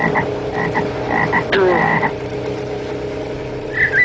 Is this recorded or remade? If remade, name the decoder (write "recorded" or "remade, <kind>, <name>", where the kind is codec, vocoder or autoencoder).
recorded